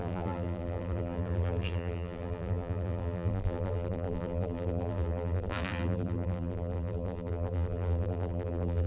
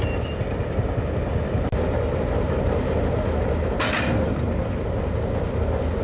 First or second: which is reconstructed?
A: first